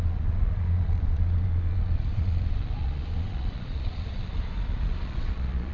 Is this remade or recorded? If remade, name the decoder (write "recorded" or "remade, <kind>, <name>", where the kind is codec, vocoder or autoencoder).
remade, vocoder, Vocos